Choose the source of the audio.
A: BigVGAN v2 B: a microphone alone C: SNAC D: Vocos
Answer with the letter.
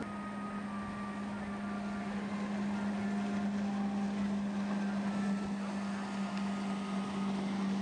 B